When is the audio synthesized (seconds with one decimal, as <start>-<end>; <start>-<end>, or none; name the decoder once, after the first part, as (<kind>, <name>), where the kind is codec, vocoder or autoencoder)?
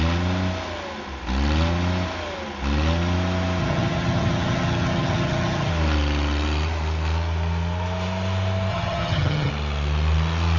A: 3.6-5.7 (vocoder, HiFi-GAN); 8.7-9.5